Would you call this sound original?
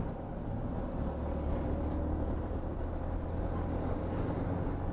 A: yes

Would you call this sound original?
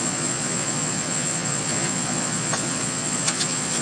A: no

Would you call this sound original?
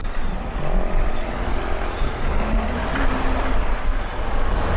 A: yes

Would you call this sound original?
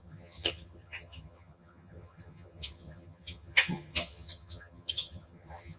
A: no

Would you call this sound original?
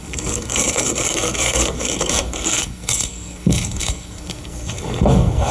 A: no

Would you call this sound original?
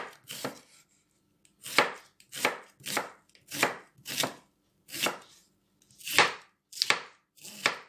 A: yes